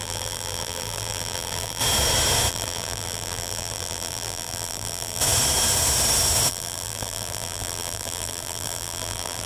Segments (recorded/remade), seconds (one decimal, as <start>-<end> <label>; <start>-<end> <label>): 0.0-1.8 remade; 1.8-2.5 recorded; 2.5-5.2 remade; 5.2-6.5 recorded; 6.5-9.5 remade